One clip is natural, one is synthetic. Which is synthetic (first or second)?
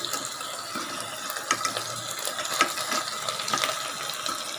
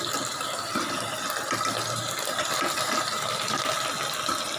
second